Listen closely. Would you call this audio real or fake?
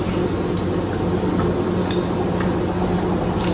real